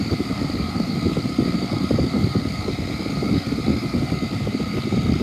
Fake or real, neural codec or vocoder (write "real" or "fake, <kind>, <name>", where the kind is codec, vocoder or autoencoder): fake, codec, DAC